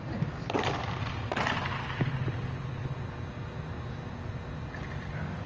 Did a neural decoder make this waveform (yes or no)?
no